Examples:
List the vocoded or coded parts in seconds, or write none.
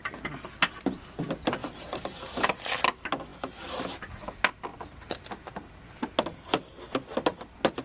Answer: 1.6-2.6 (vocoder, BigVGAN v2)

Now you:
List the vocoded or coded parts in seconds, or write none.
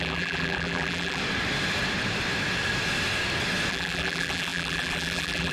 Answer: 0.0-1.2 (vocoder, BigVGAN v2); 3.7-5.5